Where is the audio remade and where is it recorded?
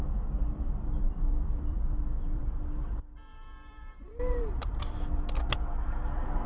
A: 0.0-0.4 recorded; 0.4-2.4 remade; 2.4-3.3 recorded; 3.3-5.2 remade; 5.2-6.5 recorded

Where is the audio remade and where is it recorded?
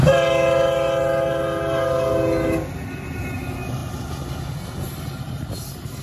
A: 0.0-6.0 recorded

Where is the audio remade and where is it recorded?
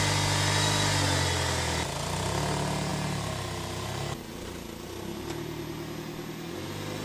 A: 0.0-7.0 recorded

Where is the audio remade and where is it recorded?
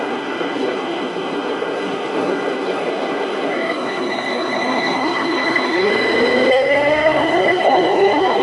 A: 0.0-5.9 remade; 5.9-6.5 recorded; 6.5-8.4 remade